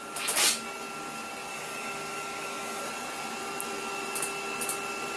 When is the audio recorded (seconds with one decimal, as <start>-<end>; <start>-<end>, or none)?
0.0-1.5; 2.8-5.2